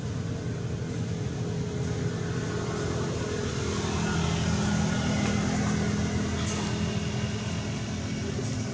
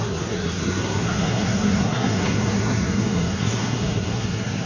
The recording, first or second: first